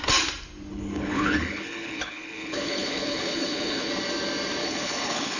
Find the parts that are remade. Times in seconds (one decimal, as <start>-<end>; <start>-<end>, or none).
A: 0.7-3.9; 4.6-5.4